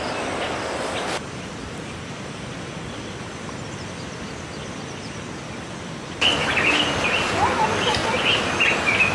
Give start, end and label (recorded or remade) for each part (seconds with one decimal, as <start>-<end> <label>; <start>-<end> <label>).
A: 0.0-1.6 recorded; 1.6-5.2 remade; 5.2-9.1 recorded